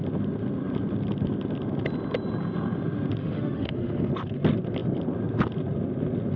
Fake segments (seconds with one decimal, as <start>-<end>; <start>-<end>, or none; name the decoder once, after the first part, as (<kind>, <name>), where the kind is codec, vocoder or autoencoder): 3.2-4.1 (autoencoder, DAC-VAE)